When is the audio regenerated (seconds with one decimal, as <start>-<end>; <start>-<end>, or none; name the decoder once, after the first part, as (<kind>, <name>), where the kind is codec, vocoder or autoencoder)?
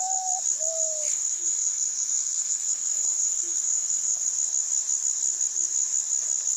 1.1-4.3 (codec, SNAC)